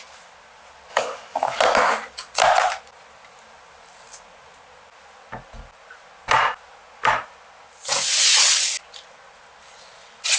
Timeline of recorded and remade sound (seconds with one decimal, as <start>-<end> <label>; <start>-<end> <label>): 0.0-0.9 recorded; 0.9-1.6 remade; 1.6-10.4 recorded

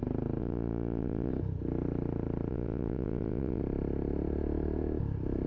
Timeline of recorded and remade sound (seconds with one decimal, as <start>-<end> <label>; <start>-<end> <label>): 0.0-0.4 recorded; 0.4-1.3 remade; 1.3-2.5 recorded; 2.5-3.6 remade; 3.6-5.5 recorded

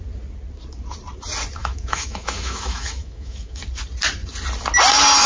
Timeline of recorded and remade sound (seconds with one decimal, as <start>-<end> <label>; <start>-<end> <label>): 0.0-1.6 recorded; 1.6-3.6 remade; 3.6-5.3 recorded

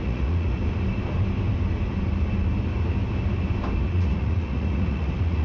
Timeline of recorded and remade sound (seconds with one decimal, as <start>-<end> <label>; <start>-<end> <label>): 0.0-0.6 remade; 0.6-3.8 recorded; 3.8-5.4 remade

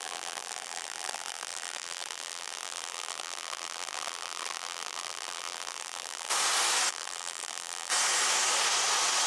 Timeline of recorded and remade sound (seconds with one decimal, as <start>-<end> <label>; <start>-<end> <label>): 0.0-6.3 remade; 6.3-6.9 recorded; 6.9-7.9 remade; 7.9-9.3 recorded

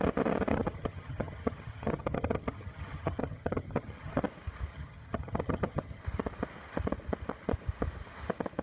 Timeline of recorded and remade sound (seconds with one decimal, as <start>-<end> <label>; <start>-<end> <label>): 0.0-0.5 recorded; 0.5-4.2 remade; 4.2-4.7 recorded; 4.7-6.0 remade; 6.0-8.6 recorded

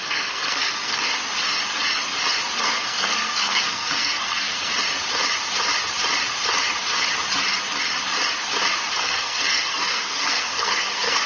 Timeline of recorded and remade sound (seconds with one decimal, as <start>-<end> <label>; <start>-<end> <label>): 0.0-1.1 remade; 1.1-2.6 recorded; 2.6-4.7 remade; 4.7-8.9 recorded; 8.9-11.3 remade

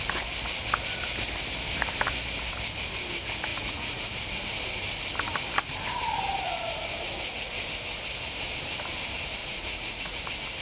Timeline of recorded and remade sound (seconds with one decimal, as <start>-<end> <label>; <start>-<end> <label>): 0.0-3.5 recorded; 3.5-4.0 remade; 4.0-9.4 recorded; 9.4-10.2 remade; 10.2-10.6 recorded